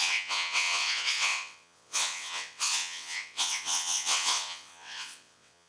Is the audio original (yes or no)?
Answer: no